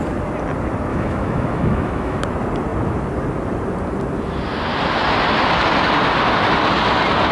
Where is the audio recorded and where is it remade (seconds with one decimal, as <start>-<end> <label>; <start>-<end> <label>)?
0.0-0.9 recorded; 0.9-2.2 remade; 2.2-7.3 recorded